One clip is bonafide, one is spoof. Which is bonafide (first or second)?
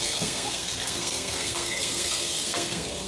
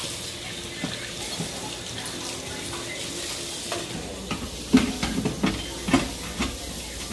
second